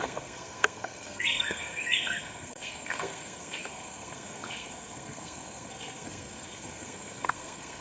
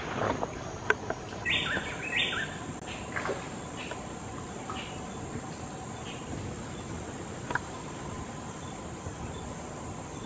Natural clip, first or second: second